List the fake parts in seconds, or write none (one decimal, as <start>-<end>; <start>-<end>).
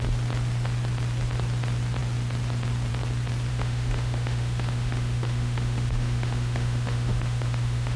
3.5-8.0